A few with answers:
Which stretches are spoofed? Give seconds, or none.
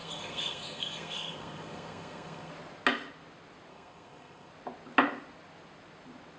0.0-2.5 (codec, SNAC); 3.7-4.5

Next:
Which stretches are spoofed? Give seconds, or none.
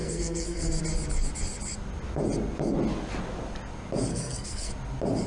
0.0-0.8 (codec, SNAC); 4.1-4.7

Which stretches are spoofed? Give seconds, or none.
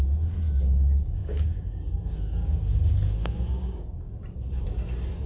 1.2-4.1 (codec, DAC)